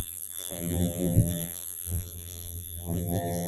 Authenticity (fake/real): fake